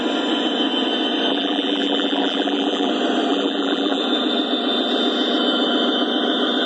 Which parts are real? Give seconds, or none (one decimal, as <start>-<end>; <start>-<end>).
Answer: 0.0-1.3; 2.9-3.3; 4.0-6.7